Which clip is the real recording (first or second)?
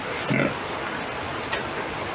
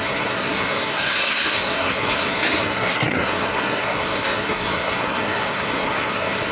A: first